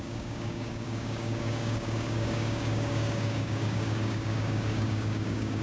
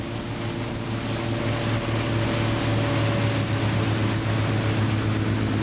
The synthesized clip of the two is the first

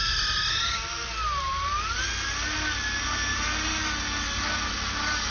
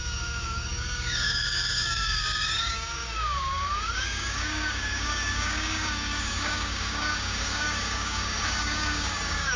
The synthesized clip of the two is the second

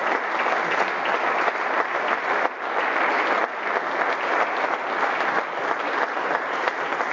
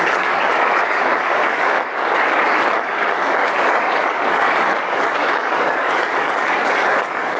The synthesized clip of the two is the second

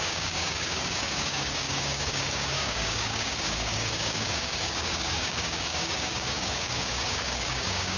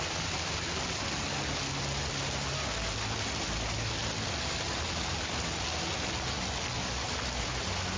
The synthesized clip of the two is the first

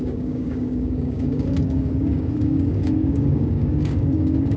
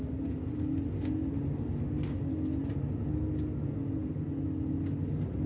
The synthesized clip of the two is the first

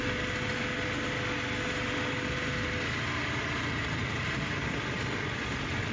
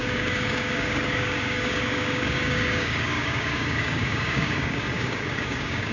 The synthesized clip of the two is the second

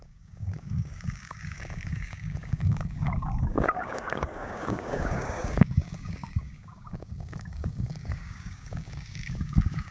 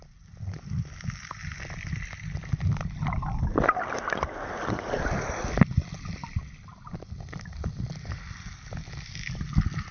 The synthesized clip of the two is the first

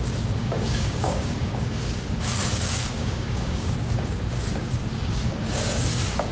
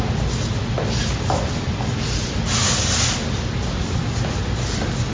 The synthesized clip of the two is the first